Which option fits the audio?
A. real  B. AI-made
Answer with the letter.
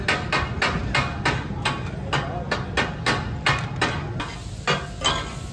A